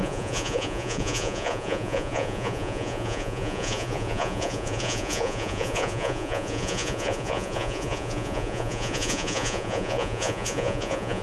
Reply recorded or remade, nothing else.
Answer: remade